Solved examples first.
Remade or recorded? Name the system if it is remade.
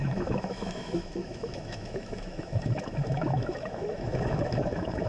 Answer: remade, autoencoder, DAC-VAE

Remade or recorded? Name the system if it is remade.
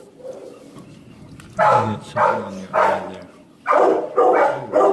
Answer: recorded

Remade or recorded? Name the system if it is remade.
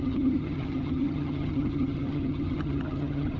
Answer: remade, vocoder, HiFi-GAN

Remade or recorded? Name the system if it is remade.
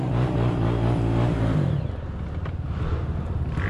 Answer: recorded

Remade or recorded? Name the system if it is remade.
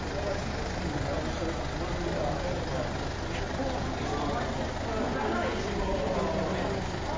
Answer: recorded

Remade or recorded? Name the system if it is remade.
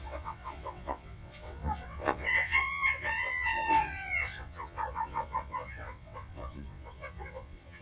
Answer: remade, vocoder, WaveNeXt